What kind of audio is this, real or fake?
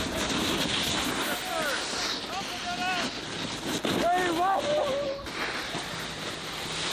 real